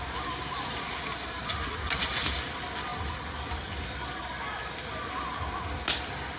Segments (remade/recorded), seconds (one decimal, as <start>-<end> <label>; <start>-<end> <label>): 0.0-6.4 recorded